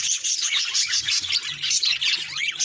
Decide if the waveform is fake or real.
fake